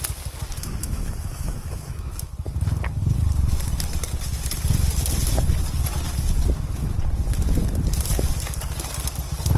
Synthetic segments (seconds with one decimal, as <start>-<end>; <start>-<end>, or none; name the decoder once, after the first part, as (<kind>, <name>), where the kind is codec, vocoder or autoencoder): 0.8-2.3 (autoencoder, DAC-VAE)

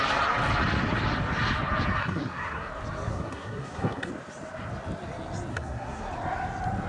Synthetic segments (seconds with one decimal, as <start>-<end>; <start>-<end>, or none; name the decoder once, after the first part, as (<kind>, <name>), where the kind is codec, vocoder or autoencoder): 2.0-2.7 (codec, SNAC); 3.1-4.1; 5.5-6.1

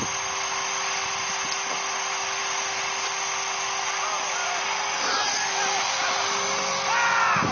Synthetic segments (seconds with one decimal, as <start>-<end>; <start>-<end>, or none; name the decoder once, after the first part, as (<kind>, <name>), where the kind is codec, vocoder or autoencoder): none

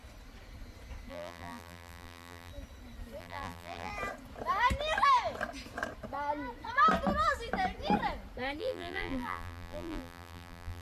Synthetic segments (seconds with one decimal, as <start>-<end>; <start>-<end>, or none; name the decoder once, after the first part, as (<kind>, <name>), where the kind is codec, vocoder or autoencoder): 1.1-2.5 (vocoder, BigVGAN v2); 3.2-3.9; 8.6-10.8

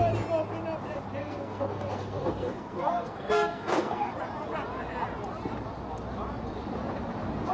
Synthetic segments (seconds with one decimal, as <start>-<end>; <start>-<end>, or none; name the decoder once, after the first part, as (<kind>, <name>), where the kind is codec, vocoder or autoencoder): 1.2-4.1 (codec, SNAC)

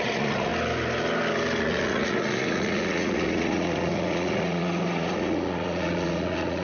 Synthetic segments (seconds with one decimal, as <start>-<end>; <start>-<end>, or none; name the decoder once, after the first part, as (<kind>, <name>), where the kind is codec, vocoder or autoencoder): 0.0-0.5 (vocoder, Vocos); 1.6-6.6